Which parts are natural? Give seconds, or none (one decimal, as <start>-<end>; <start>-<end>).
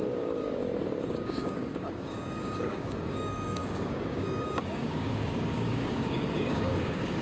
0.6-1.1